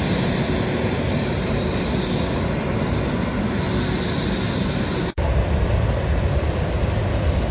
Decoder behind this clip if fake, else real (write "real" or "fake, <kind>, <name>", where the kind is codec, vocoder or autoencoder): real